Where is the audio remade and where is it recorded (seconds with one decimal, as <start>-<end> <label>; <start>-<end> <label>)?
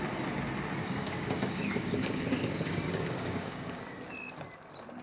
0.0-0.8 recorded; 0.8-3.8 remade; 3.8-5.0 recorded